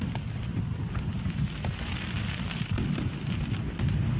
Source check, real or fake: fake